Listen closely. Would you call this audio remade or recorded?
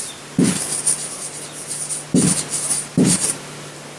recorded